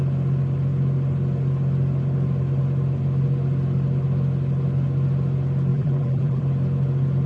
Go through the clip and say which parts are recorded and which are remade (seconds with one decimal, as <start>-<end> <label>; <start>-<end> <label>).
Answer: 0.0-5.7 recorded; 5.7-6.4 remade; 6.4-7.3 recorded